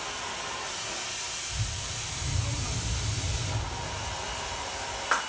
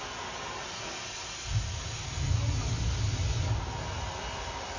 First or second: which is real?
second